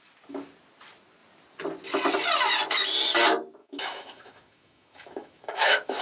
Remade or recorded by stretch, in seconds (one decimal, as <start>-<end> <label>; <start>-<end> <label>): 0.0-3.6 recorded; 3.6-6.0 remade